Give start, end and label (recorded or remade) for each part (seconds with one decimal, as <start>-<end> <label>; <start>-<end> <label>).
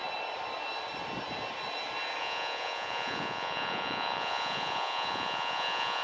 0.0-2.2 recorded; 2.2-6.0 remade